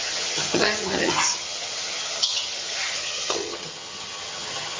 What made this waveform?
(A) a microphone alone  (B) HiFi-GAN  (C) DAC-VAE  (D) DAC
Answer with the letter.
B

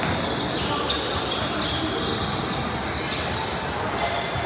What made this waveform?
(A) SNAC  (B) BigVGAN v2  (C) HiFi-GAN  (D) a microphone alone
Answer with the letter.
D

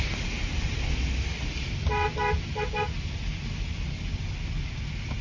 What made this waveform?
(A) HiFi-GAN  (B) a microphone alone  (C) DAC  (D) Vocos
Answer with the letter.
B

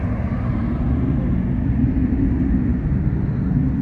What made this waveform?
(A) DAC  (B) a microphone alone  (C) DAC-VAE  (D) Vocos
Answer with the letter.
B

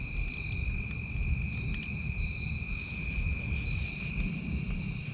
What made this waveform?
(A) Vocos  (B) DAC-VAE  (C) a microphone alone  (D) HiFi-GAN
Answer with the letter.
C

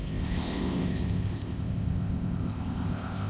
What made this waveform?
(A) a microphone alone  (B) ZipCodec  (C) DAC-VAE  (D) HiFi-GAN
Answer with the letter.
B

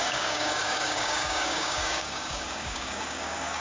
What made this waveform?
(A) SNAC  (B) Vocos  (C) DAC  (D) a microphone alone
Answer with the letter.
C